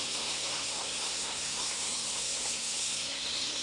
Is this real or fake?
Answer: fake